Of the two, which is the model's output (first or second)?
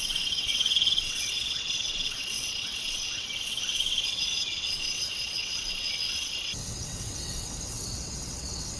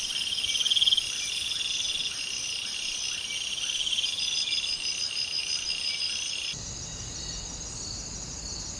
first